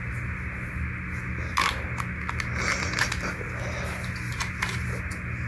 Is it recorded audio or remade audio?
recorded